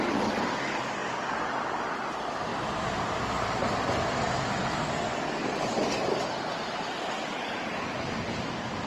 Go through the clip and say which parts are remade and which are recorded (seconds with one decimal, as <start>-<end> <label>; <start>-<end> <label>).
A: 0.0-8.9 recorded